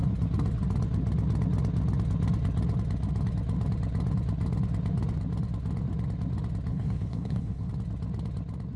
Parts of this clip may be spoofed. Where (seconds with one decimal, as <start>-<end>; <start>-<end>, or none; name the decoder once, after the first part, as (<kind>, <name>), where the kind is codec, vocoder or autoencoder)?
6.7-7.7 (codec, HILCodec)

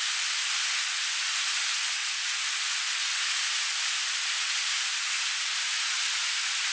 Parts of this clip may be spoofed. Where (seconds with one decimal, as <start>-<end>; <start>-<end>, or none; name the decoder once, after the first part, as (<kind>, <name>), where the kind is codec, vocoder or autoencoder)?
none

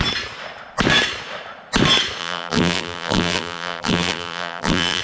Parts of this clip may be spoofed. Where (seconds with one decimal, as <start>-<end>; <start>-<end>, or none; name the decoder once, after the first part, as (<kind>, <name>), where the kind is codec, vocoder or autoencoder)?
2.2-5.0 (vocoder, BigVGAN v2)

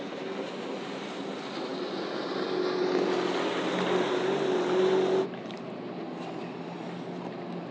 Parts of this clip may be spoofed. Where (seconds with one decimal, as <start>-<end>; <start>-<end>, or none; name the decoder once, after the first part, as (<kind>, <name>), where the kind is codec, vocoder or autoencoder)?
none